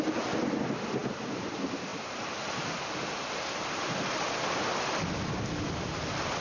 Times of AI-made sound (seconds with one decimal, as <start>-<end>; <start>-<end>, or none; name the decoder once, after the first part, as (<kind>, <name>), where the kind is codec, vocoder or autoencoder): none

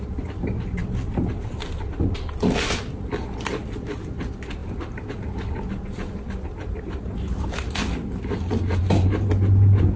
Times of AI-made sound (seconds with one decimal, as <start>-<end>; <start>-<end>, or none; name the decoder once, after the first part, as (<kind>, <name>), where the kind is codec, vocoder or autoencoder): none

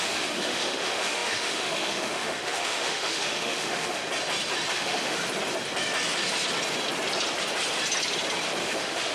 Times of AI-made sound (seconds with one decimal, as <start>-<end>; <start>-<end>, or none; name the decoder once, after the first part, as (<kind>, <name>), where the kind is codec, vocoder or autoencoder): 0.0-4.0 (autoencoder, DAC-VAE); 4.7-5.2; 8.6-9.1